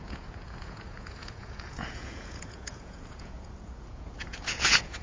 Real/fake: fake